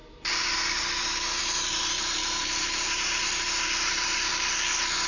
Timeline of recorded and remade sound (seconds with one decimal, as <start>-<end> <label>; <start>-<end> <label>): 0.0-0.8 remade; 0.8-1.4 recorded; 1.4-4.3 remade; 4.3-5.1 recorded

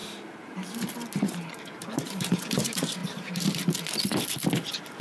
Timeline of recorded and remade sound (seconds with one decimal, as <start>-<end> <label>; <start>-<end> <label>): 0.0-3.0 remade; 3.0-5.0 recorded

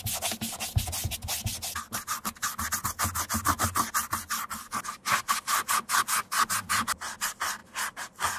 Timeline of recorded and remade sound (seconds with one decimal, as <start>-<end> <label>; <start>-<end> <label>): 0.0-7.6 recorded; 7.6-8.4 remade